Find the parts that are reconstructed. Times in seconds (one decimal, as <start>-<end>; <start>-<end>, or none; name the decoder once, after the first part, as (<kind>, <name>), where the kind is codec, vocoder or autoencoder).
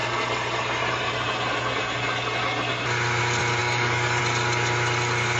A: 3.6-4.2 (codec, DAC)